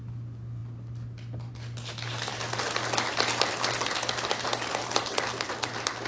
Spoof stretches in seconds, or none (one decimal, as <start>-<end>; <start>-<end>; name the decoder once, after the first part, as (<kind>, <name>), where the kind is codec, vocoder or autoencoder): none